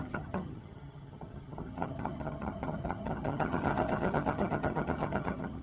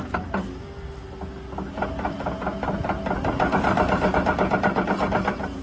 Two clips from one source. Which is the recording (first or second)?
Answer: second